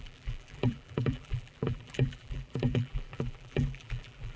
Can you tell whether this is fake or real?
fake